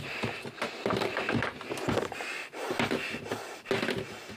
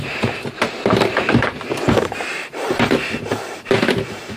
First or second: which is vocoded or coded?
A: second